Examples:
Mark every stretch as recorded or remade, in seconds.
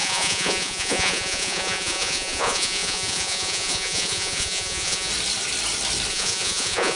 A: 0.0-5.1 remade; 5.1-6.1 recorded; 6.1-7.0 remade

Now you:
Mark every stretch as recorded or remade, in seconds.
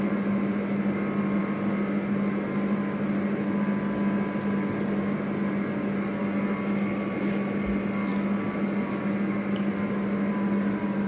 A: 0.0-11.1 recorded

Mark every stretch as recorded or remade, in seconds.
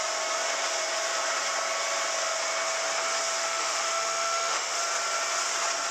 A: 0.0-3.4 recorded; 3.4-4.8 remade; 4.8-5.9 recorded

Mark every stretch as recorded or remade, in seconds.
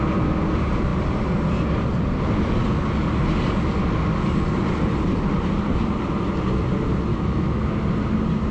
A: 0.0-7.1 recorded; 7.1-7.6 remade; 7.6-8.5 recorded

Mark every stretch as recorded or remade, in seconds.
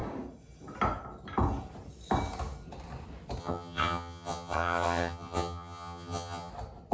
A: 0.0-3.4 recorded; 3.4-6.5 remade; 6.5-6.9 recorded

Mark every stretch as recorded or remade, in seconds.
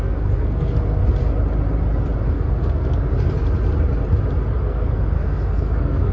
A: 0.0-1.0 remade; 1.0-2.3 recorded; 2.3-3.1 remade; 3.1-4.6 recorded; 4.6-6.1 remade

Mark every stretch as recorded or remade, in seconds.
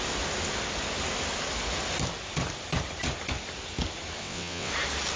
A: 0.0-4.2 recorded; 4.2-4.7 remade; 4.7-5.2 recorded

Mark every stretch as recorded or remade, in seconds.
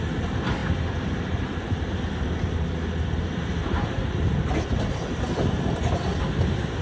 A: 0.0-6.8 recorded